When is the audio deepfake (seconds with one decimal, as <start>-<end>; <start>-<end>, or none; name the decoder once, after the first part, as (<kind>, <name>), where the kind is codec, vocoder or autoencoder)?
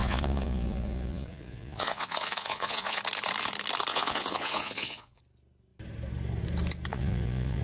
0.0-3.0 (vocoder, Vocos); 3.9-5.2; 6.9-7.6